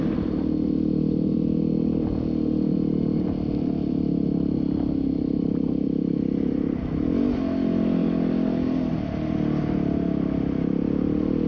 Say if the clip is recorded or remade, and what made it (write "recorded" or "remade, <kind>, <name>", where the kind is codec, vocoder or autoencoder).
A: recorded